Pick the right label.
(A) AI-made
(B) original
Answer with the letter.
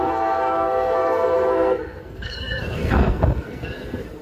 A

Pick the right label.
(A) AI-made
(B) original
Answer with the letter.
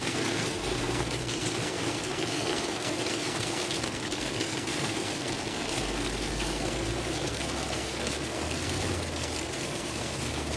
A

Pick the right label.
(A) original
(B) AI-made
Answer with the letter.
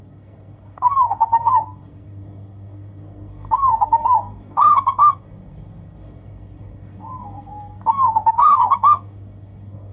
B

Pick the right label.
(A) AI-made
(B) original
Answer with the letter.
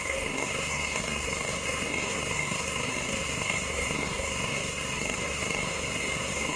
A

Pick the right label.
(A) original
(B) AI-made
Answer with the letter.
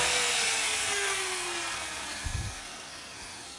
B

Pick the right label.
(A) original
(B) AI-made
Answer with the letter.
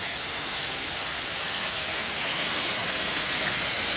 B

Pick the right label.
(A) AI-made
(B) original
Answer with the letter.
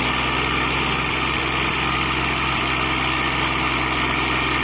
B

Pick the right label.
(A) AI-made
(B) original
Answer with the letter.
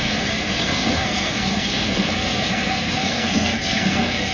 A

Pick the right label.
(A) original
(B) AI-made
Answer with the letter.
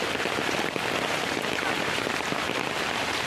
A